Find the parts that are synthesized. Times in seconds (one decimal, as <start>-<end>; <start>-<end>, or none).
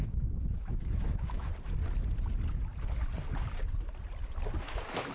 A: 0.0-1.5; 4.6-5.1